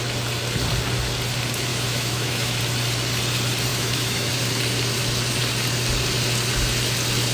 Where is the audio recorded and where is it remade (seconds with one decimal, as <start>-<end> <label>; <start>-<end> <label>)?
0.0-1.7 recorded; 1.7-2.6 remade; 2.6-3.7 recorded; 3.7-4.3 remade; 4.3-7.3 recorded